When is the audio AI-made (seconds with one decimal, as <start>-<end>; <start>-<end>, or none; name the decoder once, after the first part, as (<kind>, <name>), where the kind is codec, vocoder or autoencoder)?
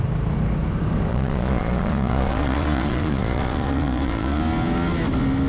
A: 1.1-4.4 (vocoder, Vocos)